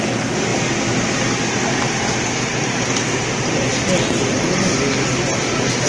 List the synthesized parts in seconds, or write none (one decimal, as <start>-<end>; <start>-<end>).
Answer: none